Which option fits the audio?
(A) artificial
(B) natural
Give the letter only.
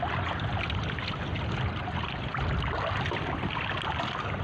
B